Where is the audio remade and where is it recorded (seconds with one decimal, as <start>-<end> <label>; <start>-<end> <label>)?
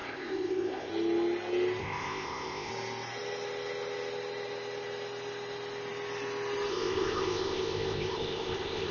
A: 0.0-0.9 remade; 0.9-1.8 recorded; 1.8-2.7 remade; 2.7-6.7 recorded; 6.7-8.9 remade